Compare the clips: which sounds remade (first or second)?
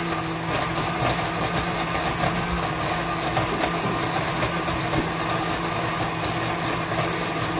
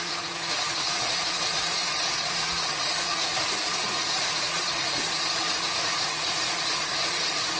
second